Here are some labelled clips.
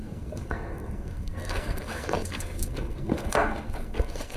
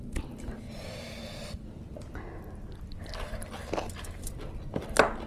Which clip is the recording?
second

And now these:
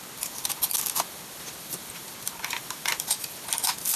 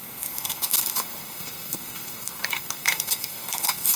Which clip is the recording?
first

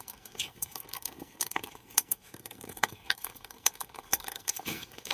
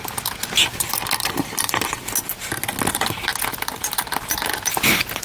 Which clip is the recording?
second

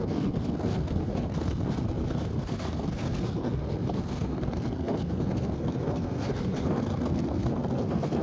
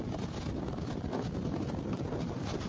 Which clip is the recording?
second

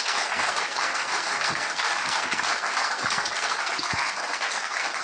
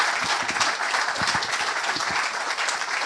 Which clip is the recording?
second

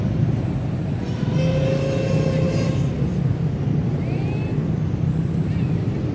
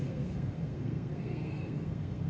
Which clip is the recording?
first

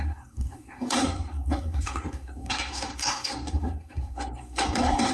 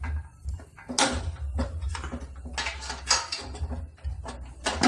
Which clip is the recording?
second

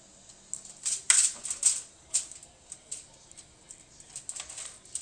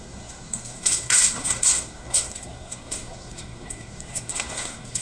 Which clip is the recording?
first